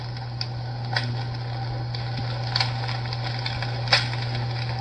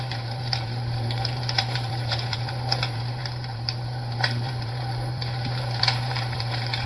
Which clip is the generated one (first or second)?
second